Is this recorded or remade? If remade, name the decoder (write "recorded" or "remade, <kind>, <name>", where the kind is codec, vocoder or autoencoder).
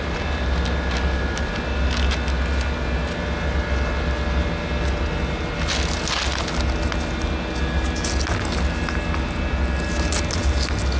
recorded